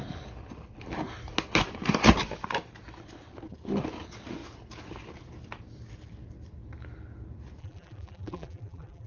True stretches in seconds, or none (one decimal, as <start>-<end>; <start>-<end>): 0.0-7.6